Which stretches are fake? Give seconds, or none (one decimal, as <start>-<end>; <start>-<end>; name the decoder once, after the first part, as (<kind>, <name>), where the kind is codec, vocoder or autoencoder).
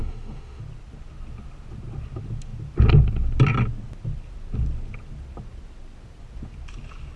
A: 0.0-0.6 (autoencoder, DAC-VAE)